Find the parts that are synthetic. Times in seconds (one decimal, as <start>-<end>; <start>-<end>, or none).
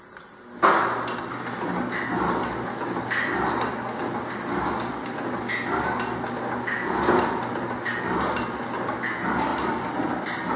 9.5-10.6